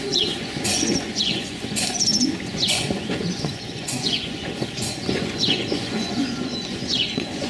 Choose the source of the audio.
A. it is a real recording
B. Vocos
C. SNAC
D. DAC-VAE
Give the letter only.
B